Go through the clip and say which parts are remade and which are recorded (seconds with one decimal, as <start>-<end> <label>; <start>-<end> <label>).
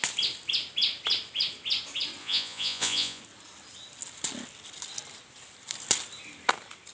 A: 0.0-2.2 recorded; 2.2-3.2 remade; 3.2-6.9 recorded